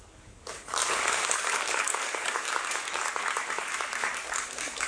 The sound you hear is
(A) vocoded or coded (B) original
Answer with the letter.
A